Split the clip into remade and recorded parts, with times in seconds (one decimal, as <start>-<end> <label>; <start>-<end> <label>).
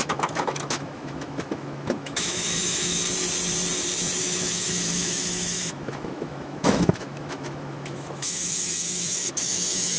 0.0-3.0 remade; 3.0-4.2 recorded; 4.2-10.0 remade